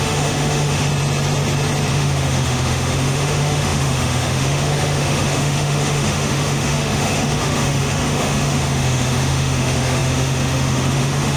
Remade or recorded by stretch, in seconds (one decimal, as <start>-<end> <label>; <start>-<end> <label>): 0.0-0.9 remade; 0.9-1.9 recorded; 1.9-11.4 remade